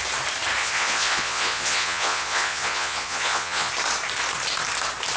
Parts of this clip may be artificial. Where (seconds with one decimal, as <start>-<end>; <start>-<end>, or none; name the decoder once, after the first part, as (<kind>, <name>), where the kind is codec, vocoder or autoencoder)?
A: 0.6-3.7 (vocoder, Vocos)